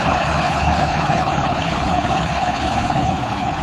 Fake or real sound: fake